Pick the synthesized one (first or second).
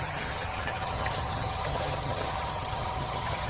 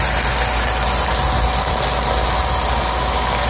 first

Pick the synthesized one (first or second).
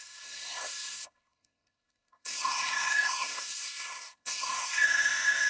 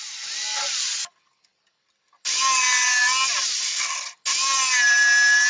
first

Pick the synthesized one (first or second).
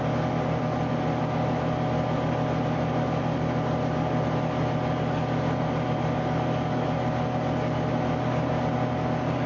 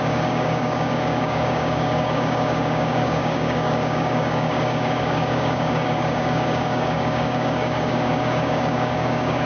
second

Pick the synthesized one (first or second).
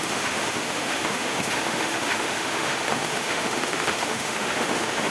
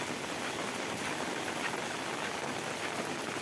first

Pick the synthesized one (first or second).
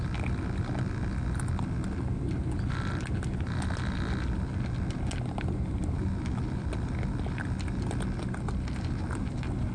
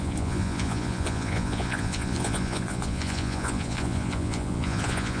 second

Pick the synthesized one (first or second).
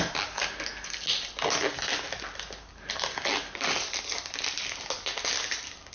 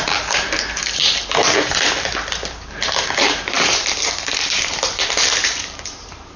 second